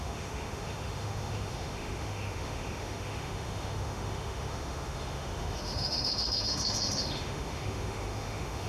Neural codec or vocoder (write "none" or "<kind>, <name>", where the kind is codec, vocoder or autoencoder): autoencoder, DAC-VAE